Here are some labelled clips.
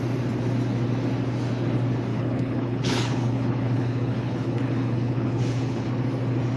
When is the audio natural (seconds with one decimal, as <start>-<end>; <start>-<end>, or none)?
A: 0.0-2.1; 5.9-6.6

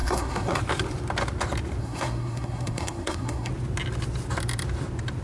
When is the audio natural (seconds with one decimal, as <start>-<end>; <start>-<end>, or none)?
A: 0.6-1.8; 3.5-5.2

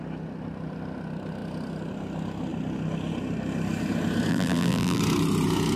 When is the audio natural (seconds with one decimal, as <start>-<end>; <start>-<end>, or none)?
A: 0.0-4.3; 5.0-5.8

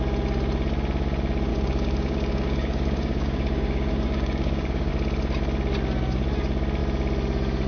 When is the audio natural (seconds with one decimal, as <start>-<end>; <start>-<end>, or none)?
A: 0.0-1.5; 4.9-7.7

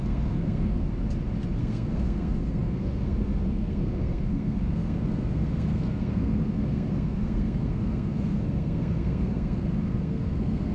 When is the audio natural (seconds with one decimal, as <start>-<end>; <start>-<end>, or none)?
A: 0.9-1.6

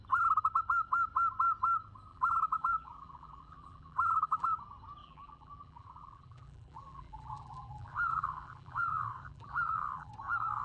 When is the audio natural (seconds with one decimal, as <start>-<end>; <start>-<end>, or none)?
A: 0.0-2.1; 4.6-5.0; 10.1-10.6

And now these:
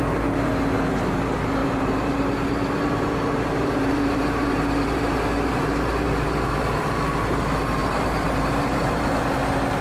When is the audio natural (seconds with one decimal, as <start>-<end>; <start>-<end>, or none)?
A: 0.0-1.6; 6.9-7.8; 9.3-9.8